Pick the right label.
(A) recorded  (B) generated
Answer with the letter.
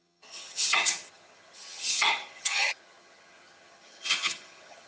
B